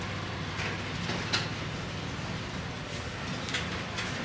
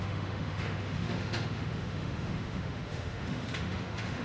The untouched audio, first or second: first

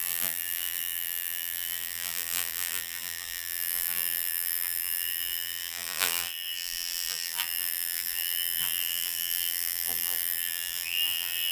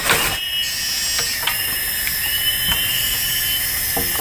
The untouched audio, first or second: second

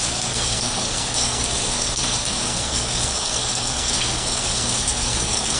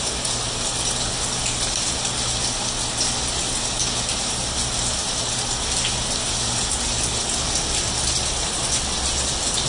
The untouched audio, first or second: second